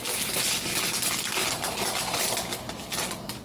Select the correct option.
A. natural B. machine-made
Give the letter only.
A